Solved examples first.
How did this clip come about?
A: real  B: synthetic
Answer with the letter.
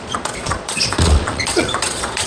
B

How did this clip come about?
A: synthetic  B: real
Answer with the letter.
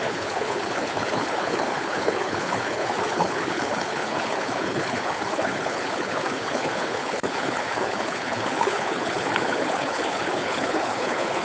A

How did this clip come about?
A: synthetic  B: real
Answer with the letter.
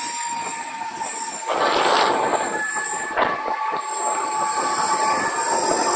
B